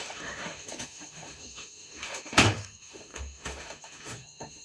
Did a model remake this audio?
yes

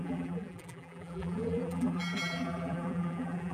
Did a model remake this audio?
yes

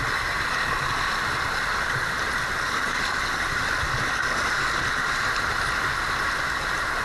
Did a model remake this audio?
no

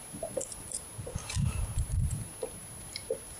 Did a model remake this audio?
no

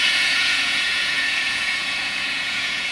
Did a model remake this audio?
yes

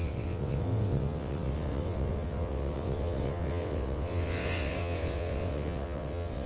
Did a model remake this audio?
yes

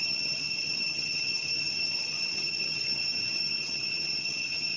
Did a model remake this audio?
yes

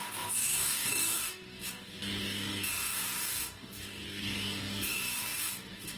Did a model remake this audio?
yes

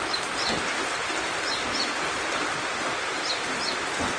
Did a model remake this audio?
no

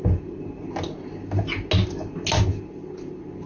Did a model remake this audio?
no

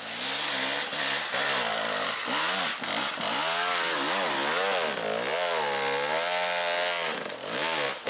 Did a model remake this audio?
no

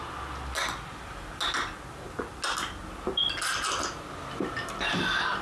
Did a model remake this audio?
no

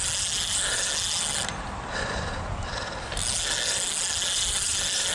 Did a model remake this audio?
no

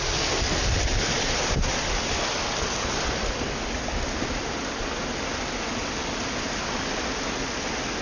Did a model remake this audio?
no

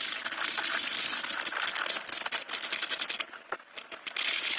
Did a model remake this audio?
no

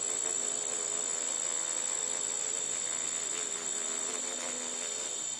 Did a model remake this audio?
no